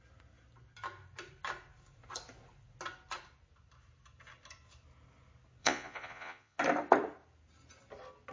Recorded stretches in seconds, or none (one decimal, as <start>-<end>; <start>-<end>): 0.0-5.6; 6.6-8.3